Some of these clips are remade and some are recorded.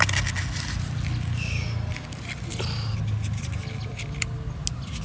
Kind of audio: recorded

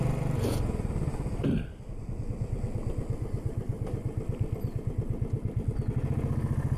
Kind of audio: recorded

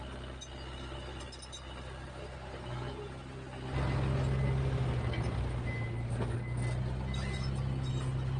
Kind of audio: recorded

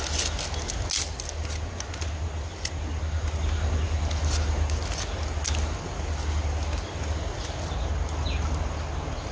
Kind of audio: recorded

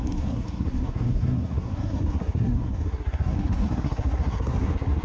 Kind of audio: remade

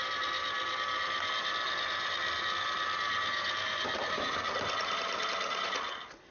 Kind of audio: recorded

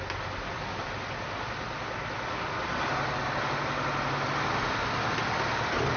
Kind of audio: recorded